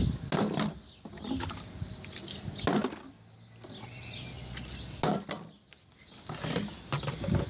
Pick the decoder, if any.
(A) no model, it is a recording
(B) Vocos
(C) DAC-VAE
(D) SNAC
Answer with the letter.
A